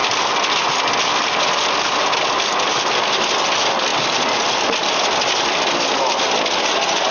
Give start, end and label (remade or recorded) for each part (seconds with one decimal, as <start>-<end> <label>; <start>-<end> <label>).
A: 0.0-7.1 recorded